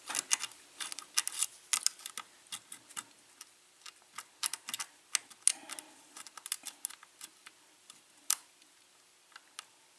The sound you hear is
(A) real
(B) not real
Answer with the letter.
A